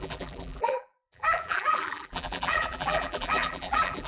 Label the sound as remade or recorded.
remade